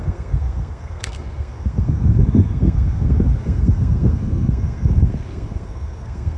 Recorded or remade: remade